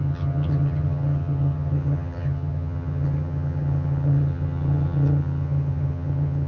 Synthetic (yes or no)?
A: yes